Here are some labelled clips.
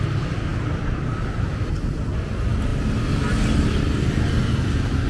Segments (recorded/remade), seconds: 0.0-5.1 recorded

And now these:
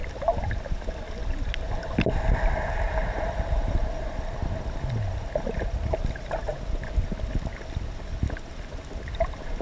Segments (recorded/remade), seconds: 0.0-9.6 recorded

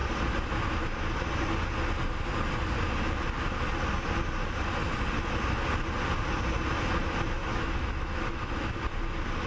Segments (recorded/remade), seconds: 0.0-7.4 recorded; 7.4-8.7 remade; 8.7-9.5 recorded

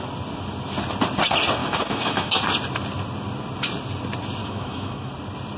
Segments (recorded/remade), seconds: 0.0-1.6 recorded; 1.6-2.4 remade; 2.4-4.4 recorded; 4.4-5.1 remade; 5.1-5.6 recorded

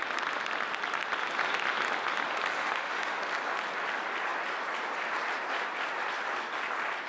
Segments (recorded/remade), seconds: 0.0-2.6 recorded; 2.6-3.2 remade; 3.2-7.1 recorded